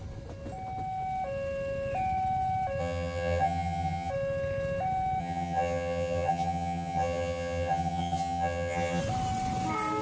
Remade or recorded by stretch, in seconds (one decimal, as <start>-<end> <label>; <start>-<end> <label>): 0.0-2.8 recorded; 2.8-4.1 remade; 4.1-5.2 recorded; 5.2-9.0 remade; 9.0-10.0 recorded

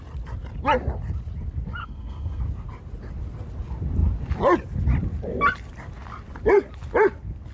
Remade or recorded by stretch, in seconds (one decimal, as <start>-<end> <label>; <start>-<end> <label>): 0.0-1.8 recorded; 1.8-2.4 remade; 2.4-7.5 recorded

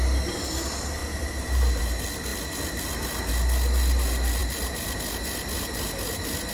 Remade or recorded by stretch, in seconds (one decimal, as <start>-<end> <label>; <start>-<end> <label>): 0.0-6.5 recorded

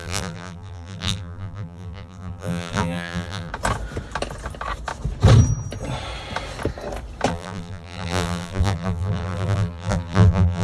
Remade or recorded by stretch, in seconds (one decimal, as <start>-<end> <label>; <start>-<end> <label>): 0.0-3.5 remade; 3.5-7.3 recorded; 7.3-10.6 remade

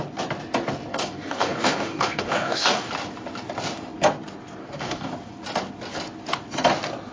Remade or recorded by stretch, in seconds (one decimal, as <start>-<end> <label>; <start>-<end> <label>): 0.0-0.9 recorded; 0.9-2.9 remade; 2.9-4.6 recorded; 4.6-5.1 remade; 5.1-7.1 recorded

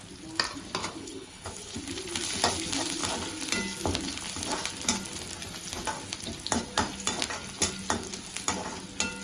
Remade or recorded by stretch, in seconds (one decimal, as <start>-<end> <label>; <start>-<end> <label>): 0.0-0.8 recorded; 0.8-1.8 remade; 1.8-9.2 recorded